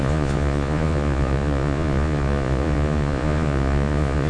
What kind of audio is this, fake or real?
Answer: fake